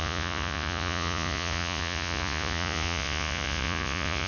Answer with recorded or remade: remade